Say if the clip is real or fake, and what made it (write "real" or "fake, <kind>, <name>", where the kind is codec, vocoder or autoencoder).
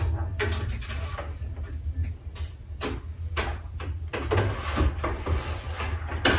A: real